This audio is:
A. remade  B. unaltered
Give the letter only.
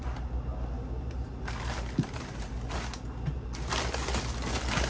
B